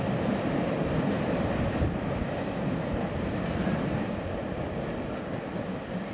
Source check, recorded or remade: recorded